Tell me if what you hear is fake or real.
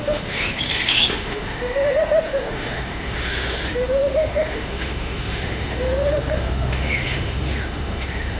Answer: fake